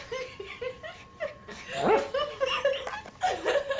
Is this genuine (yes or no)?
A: yes